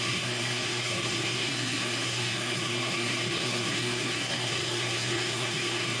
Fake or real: fake